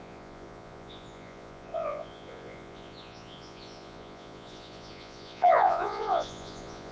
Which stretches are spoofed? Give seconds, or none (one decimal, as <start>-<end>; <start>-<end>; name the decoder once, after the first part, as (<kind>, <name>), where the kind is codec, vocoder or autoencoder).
0.0-6.9 (vocoder, Vocos)